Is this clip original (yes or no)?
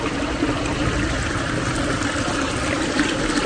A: yes